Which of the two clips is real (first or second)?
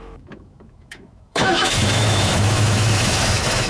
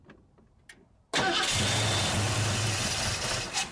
second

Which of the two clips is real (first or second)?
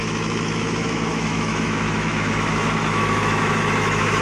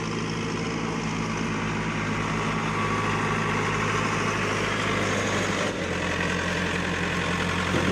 second